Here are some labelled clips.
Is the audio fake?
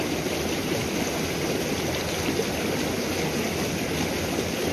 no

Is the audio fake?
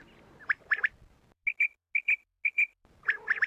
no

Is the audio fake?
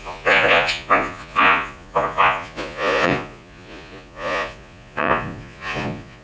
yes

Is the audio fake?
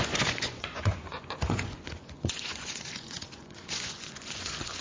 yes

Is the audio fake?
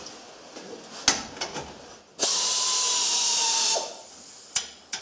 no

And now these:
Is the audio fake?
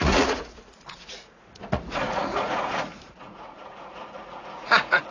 yes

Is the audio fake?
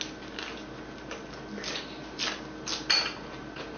no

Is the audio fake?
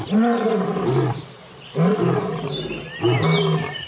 no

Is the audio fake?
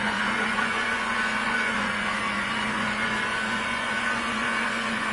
yes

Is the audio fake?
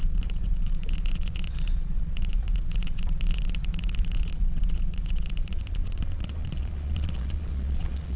yes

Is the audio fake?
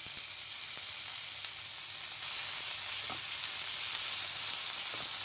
no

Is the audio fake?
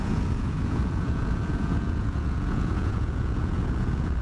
yes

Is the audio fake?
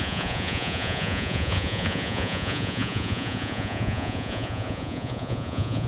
yes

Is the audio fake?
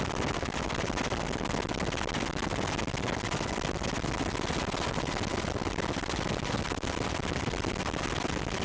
no